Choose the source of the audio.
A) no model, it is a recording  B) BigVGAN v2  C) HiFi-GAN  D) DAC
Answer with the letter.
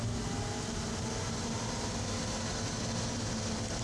A